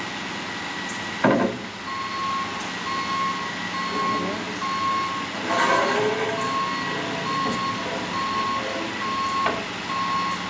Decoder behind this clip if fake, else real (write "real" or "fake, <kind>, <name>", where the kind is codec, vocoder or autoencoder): real